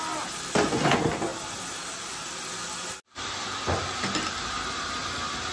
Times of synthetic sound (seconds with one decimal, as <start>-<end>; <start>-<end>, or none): none